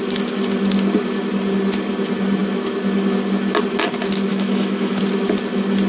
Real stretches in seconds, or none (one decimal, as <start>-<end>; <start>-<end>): 0.0-4.3; 5.0-5.9

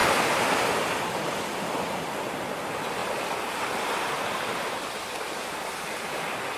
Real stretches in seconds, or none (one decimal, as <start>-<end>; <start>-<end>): 0.0-6.6

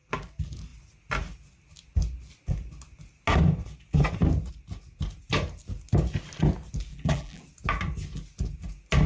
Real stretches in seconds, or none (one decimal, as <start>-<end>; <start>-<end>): 0.0-6.9; 7.4-9.1

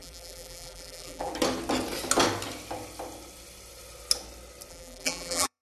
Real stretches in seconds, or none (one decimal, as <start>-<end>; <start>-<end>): 1.3-4.7

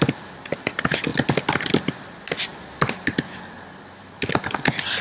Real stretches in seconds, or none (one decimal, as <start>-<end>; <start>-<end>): 0.0-5.0

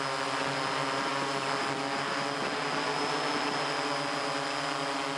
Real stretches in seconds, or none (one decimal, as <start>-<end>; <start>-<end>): 0.0-5.2